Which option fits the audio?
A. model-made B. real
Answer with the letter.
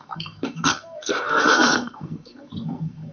A